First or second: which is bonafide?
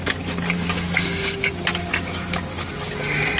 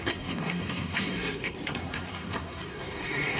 first